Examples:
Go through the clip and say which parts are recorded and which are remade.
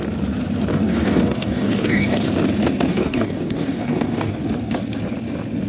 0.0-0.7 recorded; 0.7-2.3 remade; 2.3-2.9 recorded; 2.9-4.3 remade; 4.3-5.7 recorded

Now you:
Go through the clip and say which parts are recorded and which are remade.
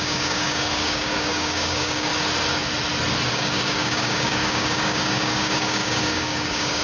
0.0-2.1 remade; 2.1-3.3 recorded; 3.3-6.8 remade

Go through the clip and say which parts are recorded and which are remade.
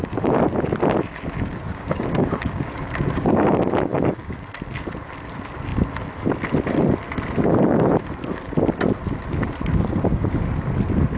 0.0-1.7 recorded; 1.7-3.4 remade; 3.4-3.9 recorded; 3.9-4.4 remade; 4.4-9.8 recorded; 9.8-10.4 remade; 10.4-11.2 recorded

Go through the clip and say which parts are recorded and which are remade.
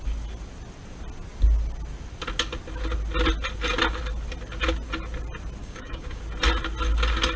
0.0-5.6 recorded; 5.6-6.2 remade; 6.2-7.4 recorded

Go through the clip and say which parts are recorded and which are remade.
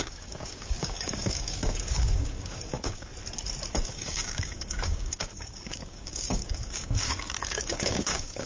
0.0-3.1 remade; 3.1-3.7 recorded; 3.7-8.5 remade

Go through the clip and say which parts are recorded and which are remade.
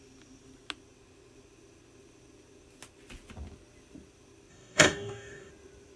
0.0-4.5 recorded; 4.5-5.5 remade; 5.5-6.0 recorded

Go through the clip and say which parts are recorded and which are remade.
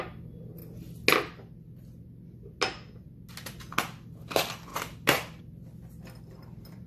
0.0-6.9 recorded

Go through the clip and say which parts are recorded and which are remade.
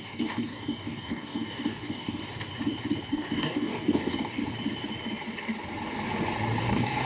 0.0-2.2 remade; 2.2-3.1 recorded; 3.1-4.4 remade; 4.4-6.6 recorded; 6.6-7.1 remade